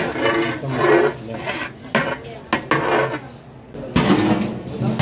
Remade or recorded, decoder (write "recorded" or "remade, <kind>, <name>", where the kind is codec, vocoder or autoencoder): recorded